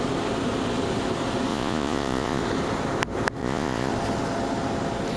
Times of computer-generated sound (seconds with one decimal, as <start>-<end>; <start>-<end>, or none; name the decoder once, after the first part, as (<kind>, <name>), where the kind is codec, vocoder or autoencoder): 1.5-2.4 (vocoder, Vocos); 3.4-3.9

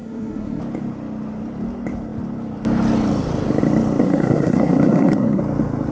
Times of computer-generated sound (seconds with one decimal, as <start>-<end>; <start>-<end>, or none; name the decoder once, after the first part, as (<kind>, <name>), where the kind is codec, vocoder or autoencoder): 0.0-0.6 (codec, SNAC); 4.0-5.4

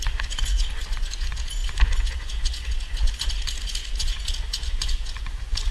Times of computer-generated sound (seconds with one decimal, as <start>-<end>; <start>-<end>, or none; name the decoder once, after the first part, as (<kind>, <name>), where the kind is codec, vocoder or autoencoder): 0.0-5.7 (vocoder, Vocos)

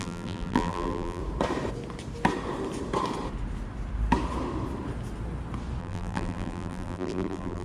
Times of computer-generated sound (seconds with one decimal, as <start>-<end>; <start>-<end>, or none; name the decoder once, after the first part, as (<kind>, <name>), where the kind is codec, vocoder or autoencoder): 0.0-1.2 (vocoder, BigVGAN v2); 5.8-7.6